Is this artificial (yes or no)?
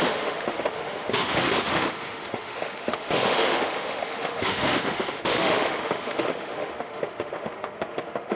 yes